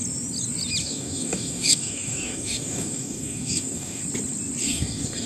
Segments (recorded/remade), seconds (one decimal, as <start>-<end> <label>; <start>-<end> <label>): 0.0-0.8 recorded; 0.8-4.0 remade; 4.0-4.6 recorded; 4.6-5.3 remade